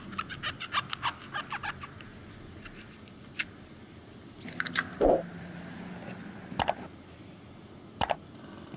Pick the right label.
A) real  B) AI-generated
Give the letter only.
A